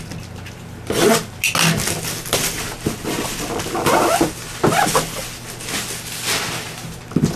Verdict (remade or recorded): recorded